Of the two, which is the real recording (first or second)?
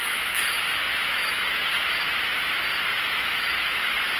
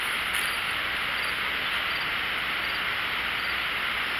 second